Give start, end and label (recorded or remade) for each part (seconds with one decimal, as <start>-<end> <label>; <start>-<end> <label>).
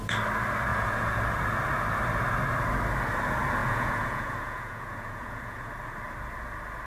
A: 0.0-0.7 recorded; 0.7-1.2 remade; 1.2-3.6 recorded; 3.6-5.7 remade; 5.7-6.9 recorded